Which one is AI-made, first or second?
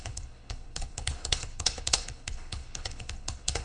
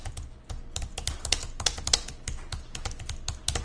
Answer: first